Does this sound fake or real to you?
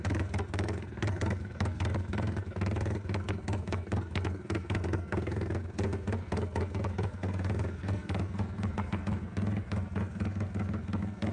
fake